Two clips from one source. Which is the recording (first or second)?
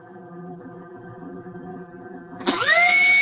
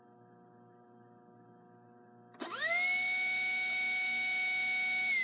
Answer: second